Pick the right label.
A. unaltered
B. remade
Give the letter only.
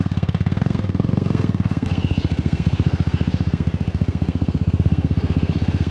B